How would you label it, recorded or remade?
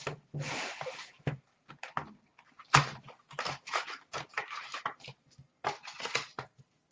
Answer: recorded